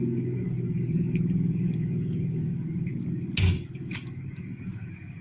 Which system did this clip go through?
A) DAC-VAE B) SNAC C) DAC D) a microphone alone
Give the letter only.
C